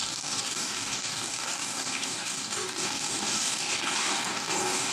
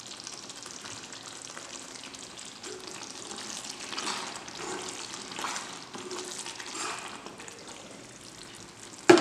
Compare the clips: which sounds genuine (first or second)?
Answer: second